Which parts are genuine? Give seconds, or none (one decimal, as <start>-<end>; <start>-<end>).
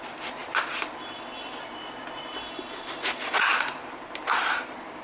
0.0-5.0